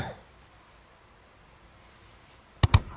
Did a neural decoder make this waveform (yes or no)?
no